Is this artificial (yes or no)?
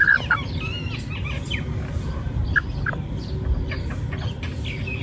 no